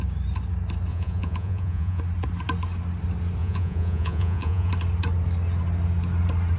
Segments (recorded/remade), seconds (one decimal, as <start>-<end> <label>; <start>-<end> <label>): 0.0-0.9 recorded; 0.9-2.0 remade; 2.0-3.4 recorded; 3.4-4.7 remade; 4.7-6.6 recorded